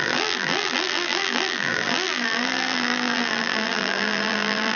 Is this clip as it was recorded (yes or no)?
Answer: no